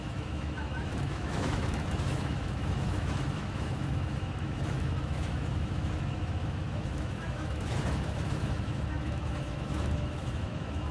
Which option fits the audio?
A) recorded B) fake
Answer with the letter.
B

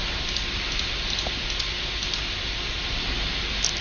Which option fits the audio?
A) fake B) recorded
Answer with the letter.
B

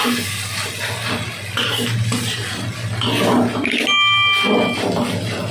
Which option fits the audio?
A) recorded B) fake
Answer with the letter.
A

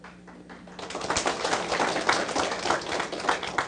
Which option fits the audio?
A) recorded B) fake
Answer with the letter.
A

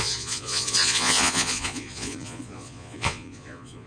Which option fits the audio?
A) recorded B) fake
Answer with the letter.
B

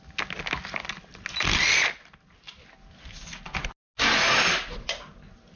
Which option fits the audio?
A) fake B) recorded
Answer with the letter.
B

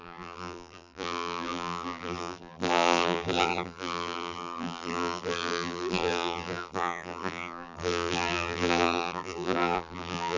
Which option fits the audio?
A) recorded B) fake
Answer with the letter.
B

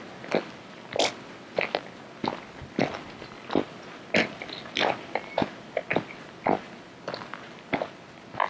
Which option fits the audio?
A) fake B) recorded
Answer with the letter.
B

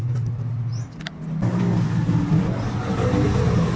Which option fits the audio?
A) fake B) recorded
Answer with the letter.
B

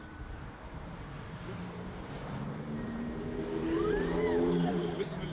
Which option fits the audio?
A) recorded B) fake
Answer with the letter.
B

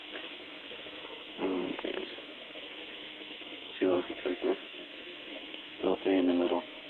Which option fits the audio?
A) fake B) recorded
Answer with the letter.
A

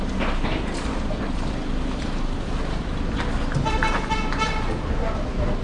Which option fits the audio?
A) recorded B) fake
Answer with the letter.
A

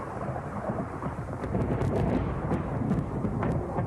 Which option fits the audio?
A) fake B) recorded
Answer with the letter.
A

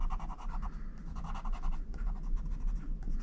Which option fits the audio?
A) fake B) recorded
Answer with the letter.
B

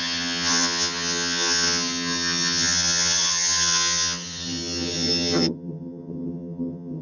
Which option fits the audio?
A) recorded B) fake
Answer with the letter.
B